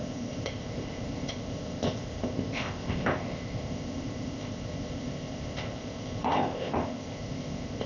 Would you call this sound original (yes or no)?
no